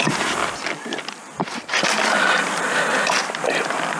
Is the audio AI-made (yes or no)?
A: yes